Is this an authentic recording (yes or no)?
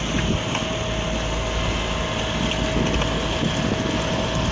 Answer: yes